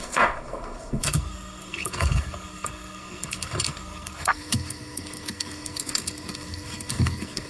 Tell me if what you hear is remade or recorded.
remade